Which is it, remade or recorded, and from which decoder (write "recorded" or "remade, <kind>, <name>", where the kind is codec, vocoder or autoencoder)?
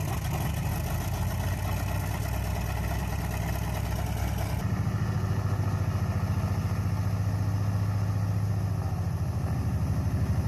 recorded